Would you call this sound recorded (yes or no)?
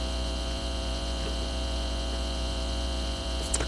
no